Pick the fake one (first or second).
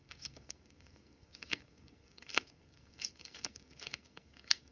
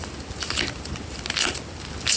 first